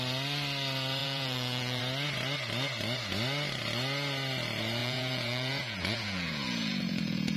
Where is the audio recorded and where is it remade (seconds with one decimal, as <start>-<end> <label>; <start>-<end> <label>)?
0.0-1.0 recorded; 1.0-1.8 remade; 1.8-4.8 recorded; 4.8-7.4 remade